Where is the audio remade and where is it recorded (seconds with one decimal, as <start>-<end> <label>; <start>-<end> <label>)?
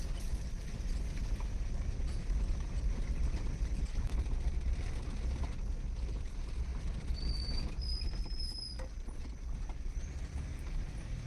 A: 0.0-1.2 recorded; 1.2-5.8 remade; 5.8-6.7 recorded; 6.7-10.9 remade; 10.9-11.3 recorded